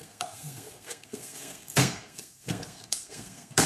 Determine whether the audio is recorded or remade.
remade